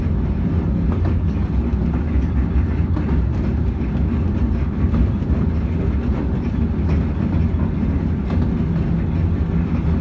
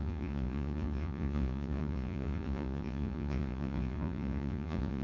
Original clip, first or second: first